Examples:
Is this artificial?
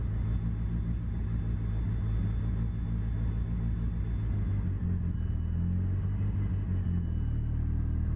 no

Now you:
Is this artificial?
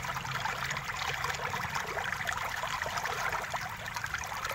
no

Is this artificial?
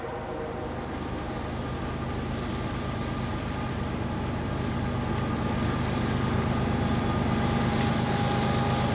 no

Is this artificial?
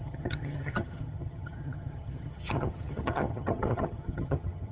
yes